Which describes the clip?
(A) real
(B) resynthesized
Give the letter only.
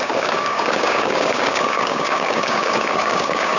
B